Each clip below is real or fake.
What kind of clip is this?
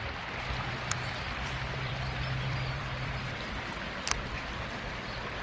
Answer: fake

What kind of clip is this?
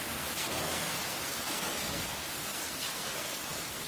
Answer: fake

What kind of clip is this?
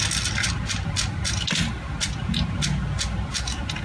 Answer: real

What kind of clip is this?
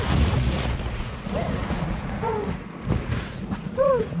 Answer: fake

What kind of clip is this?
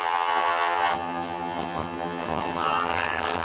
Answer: fake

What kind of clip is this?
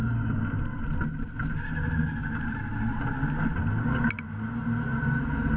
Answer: real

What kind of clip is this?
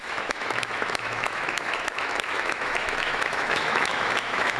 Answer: fake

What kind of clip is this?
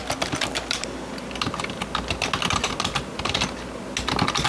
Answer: real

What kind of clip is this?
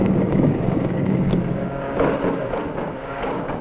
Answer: fake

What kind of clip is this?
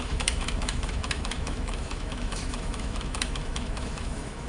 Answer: fake